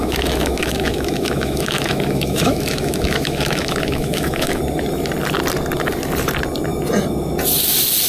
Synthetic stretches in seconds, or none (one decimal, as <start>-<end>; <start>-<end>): 0.0-4.6

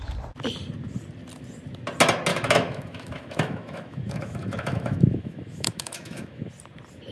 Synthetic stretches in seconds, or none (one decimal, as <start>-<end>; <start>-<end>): 2.3-6.5

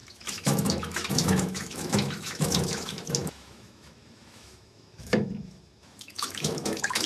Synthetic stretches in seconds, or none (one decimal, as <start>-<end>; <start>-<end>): 0.0-7.1

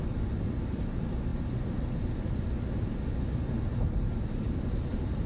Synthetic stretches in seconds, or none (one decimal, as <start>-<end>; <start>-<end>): none